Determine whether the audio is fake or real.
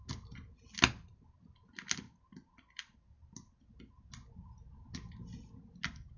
real